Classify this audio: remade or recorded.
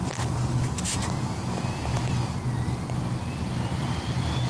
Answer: remade